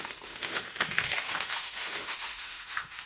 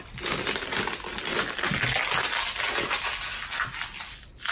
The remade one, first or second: first